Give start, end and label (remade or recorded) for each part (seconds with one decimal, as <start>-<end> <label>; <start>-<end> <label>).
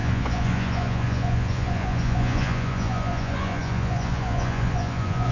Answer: 0.0-5.3 remade